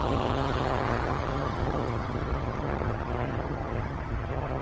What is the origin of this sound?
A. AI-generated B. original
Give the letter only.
A